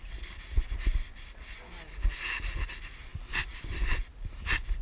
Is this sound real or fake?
real